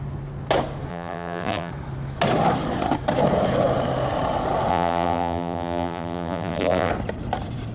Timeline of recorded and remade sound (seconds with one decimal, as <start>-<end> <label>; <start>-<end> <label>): 0.0-0.9 recorded; 0.9-1.7 remade; 1.7-4.7 recorded; 4.7-6.9 remade; 6.9-7.7 recorded